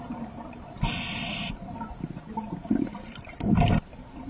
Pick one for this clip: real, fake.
fake